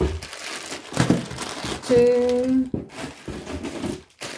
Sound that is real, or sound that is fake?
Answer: real